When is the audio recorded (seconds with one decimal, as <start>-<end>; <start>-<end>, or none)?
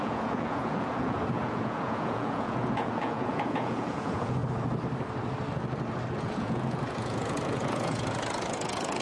4.4-6.2